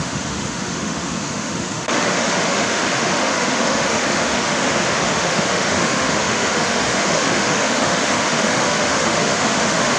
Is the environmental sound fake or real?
fake